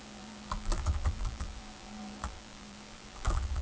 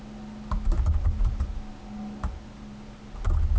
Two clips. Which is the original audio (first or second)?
second